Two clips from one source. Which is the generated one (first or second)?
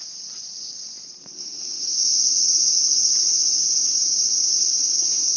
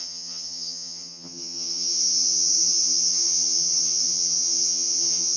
second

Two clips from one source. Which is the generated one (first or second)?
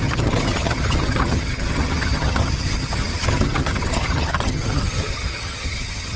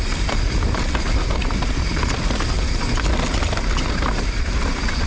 first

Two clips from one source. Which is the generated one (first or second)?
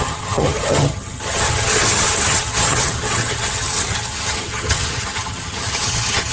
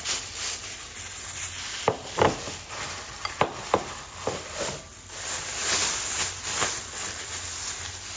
first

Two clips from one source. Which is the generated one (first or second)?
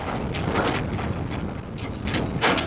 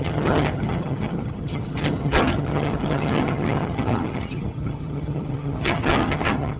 second